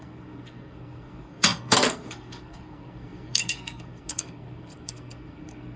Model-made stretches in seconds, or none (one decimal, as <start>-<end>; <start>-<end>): 0.0-5.8